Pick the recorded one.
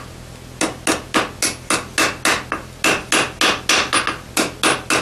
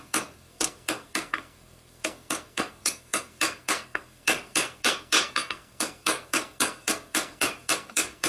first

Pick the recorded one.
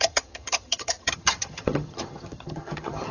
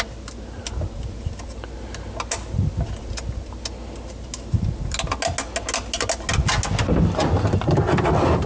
second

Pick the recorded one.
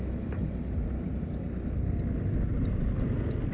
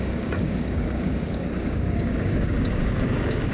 first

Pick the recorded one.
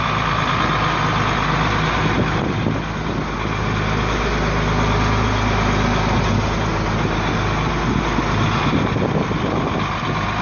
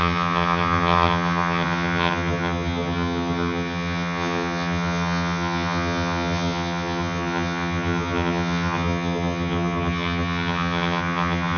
first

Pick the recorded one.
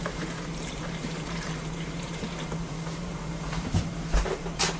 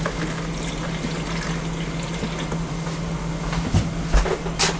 second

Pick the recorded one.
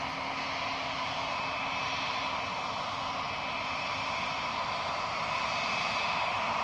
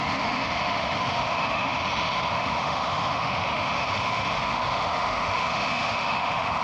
first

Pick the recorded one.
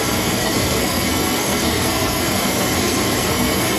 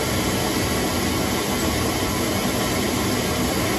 second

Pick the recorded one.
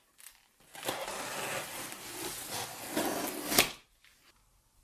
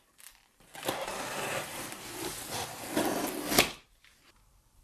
first